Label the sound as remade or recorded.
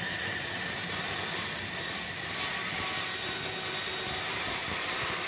recorded